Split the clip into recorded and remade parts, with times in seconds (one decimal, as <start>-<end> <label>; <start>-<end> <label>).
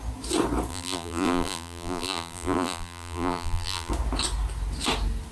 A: 0.0-0.7 recorded; 0.7-3.9 remade; 3.9-5.3 recorded